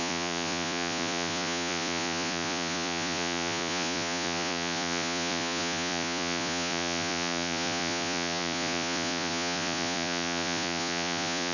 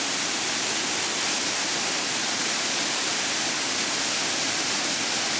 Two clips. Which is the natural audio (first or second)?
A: second